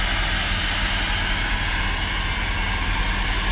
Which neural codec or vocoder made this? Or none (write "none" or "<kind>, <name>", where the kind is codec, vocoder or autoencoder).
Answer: none